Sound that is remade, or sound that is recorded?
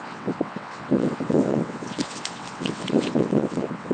remade